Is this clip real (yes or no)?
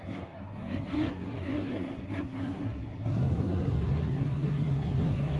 no